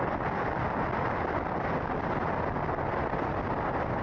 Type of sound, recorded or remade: recorded